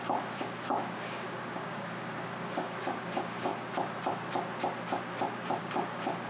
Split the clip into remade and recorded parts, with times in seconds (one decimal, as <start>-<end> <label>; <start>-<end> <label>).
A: 0.0-3.5 remade; 3.5-5.6 recorded; 5.6-6.3 remade